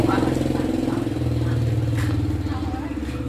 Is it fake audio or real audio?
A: real